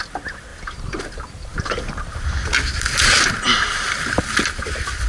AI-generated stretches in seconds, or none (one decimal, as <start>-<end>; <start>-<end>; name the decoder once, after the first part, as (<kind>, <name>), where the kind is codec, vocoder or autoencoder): none